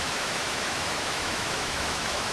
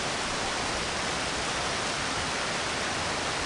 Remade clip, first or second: first